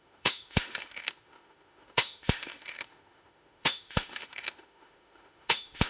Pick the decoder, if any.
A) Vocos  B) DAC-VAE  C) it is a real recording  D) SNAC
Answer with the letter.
B